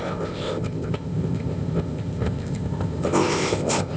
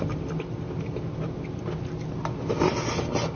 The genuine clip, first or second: second